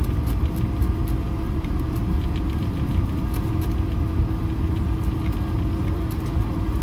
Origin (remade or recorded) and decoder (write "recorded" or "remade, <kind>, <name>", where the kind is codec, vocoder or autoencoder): recorded